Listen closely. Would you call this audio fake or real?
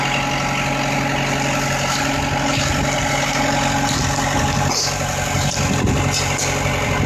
real